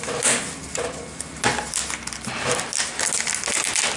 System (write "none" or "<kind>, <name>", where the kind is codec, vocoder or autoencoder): none